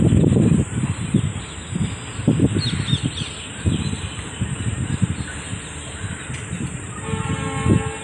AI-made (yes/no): no